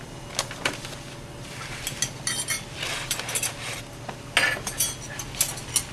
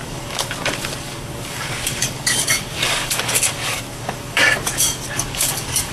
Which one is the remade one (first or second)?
second